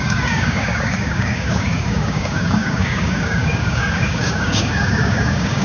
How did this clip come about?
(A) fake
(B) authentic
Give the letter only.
A